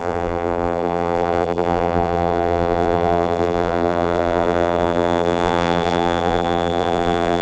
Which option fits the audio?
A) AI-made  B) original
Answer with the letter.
A